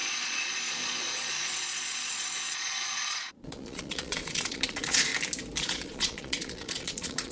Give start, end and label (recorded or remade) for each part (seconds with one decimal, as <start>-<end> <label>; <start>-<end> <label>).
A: 0.0-5.1 remade; 5.1-5.6 recorded; 5.6-7.3 remade